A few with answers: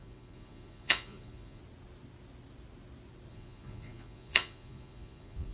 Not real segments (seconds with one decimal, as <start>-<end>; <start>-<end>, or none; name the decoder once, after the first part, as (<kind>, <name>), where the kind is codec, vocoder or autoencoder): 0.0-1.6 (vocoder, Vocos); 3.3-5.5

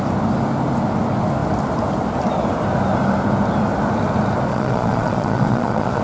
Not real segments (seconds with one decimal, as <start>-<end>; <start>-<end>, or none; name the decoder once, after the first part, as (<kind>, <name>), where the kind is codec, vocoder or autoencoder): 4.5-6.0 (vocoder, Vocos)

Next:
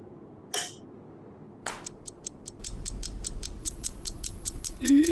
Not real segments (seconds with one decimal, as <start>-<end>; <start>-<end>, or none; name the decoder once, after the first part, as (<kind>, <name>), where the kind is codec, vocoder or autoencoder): 3.6-5.1 (vocoder, Vocos)

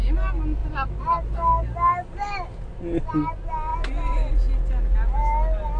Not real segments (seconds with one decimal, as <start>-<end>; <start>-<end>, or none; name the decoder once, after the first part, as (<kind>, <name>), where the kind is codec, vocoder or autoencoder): none

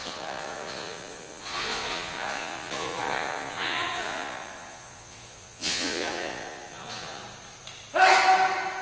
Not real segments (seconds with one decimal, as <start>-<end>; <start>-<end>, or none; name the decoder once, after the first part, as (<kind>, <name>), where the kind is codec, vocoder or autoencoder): 0.0-7.2 (vocoder, Vocos)

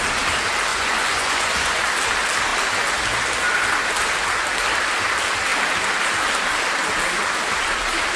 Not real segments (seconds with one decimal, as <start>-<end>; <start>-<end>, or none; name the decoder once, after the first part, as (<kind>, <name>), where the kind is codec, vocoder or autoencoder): 0.7-1.8 (vocoder, Vocos)

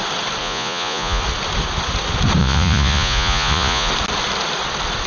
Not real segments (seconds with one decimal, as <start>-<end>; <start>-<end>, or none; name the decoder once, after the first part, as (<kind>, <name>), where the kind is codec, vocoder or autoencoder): 0.4-1.2 (vocoder, Vocos); 2.4-3.9